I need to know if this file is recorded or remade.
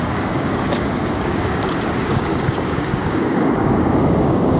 remade